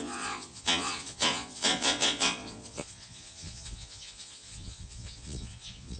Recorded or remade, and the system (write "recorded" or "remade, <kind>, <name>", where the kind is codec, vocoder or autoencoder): remade, vocoder, Vocos